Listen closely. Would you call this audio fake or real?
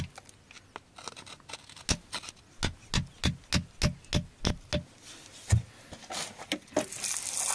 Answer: real